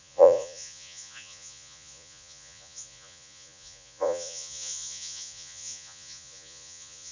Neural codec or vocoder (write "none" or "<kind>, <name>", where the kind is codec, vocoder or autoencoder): vocoder, Vocos